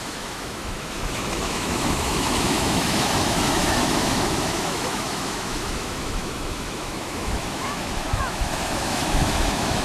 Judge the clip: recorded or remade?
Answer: remade